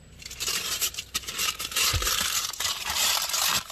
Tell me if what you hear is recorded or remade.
remade